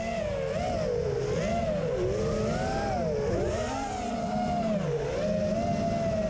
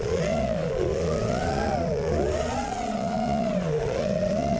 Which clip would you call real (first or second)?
first